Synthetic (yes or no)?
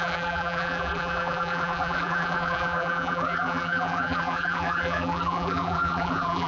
yes